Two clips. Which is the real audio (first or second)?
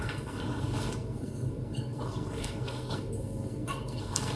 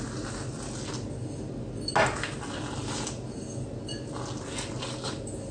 second